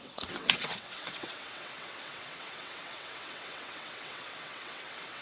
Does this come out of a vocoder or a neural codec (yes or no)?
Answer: yes